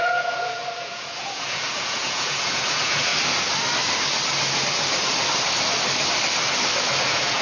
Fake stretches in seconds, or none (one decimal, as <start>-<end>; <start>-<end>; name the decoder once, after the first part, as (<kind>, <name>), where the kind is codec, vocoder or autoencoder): 0.0-3.1 (vocoder, Vocos); 7.0-7.4